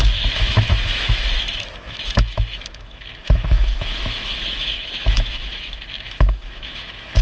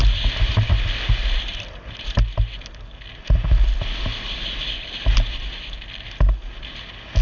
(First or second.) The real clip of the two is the second